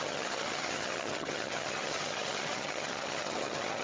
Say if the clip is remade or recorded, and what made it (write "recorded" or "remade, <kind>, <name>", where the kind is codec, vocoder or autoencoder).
remade, vocoder, HiFi-GAN